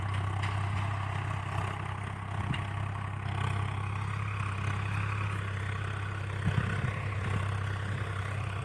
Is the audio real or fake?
real